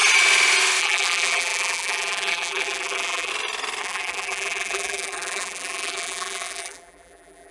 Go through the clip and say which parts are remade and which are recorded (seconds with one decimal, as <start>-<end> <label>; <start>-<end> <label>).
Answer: 0.0-0.8 recorded; 0.8-3.3 remade; 3.3-3.8 recorded; 3.8-7.5 remade